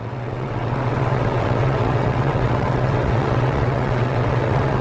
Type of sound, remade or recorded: remade